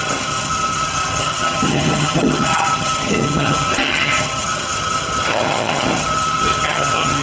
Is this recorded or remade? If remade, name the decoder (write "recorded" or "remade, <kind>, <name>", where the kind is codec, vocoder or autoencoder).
remade, vocoder, HiFi-GAN